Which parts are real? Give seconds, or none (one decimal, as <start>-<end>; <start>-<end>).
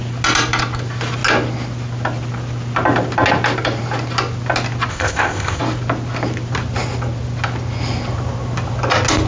0.0-4.9; 5.6-9.3